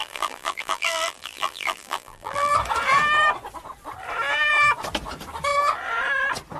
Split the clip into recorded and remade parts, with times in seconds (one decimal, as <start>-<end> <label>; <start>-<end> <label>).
0.0-2.5 remade; 2.5-6.6 recorded